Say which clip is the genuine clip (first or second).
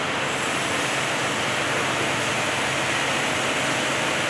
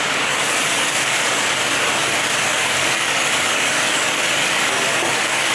first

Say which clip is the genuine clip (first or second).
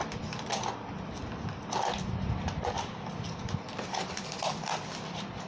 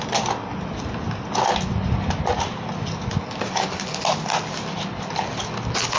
second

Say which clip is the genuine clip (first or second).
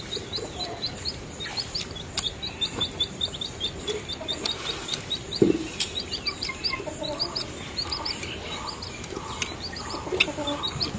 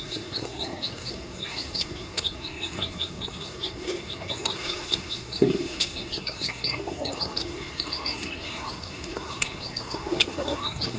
first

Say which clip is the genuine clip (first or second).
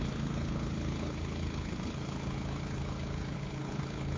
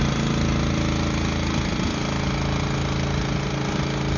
second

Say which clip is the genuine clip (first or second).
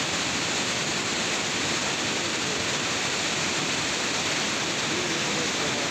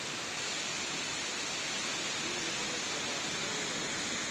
second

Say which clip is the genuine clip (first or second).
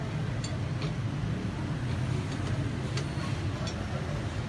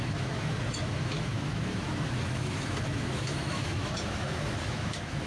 first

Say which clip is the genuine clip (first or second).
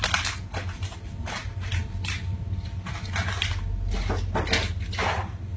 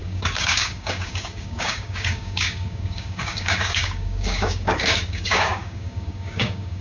first